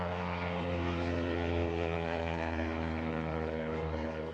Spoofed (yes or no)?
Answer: yes